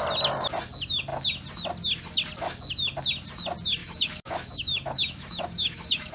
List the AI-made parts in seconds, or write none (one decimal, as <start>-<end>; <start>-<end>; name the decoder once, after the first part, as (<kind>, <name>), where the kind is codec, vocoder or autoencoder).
3.8-6.1 (autoencoder, DAC-VAE)